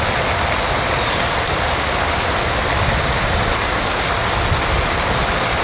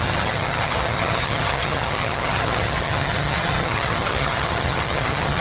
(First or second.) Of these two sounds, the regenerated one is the second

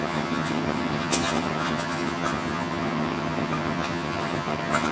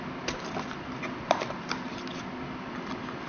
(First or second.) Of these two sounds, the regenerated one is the first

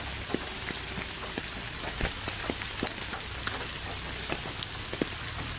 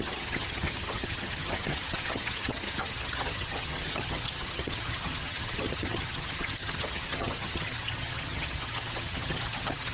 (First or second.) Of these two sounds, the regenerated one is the second